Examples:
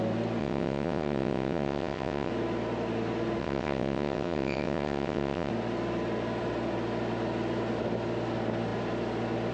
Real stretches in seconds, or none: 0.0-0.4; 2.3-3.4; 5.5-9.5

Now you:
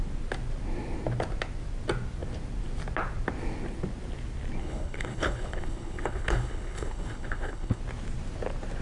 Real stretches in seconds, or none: 0.0-4.6; 7.8-8.8

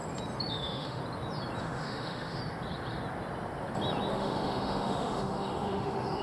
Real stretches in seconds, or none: 0.0-0.5; 1.0-1.6; 2.4-4.1

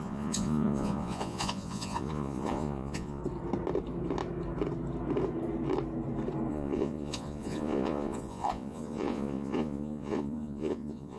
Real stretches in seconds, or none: 3.2-6.5

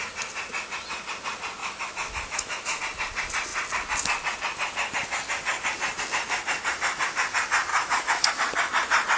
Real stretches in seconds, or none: 0.0-1.6; 2.8-7.7; 8.3-9.2

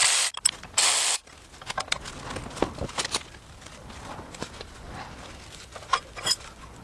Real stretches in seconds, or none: 0.0-4.1; 4.9-5.5

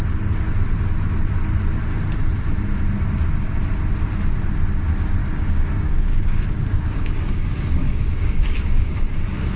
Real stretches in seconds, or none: 0.0-5.2; 8.9-9.6

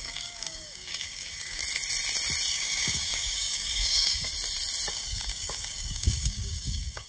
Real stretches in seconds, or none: 1.6-2.5; 4.3-4.9